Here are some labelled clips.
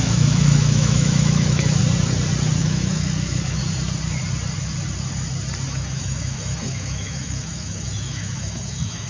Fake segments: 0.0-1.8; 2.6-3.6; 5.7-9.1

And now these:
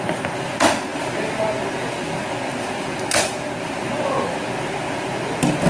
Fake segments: none

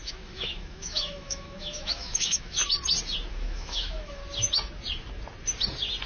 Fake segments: 0.0-2.6; 3.3-4.2

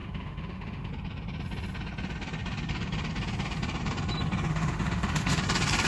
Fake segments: 0.0-0.9; 4.5-5.4

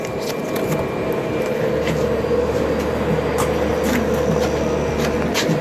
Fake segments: none

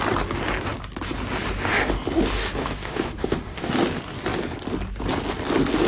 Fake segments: 2.6-3.7

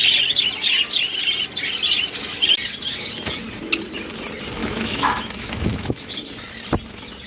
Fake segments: 4.6-6.1